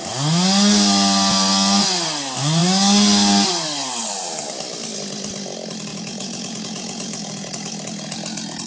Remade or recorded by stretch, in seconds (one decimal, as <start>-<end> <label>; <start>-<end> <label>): 0.0-5.9 recorded; 5.9-7.5 remade; 7.5-8.7 recorded